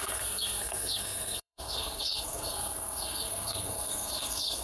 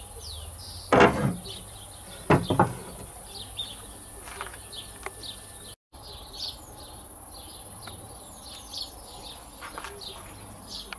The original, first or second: second